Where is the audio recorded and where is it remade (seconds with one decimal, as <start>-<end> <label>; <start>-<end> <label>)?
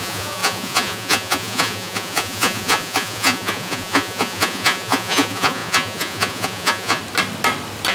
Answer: 0.0-7.0 remade; 7.0-7.9 recorded